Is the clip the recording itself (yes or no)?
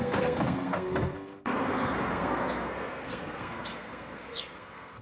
no